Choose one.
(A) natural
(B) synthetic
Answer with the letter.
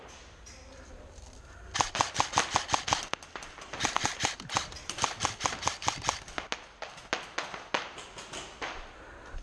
A